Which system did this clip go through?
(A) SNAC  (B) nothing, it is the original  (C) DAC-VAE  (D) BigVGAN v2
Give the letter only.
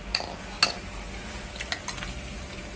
B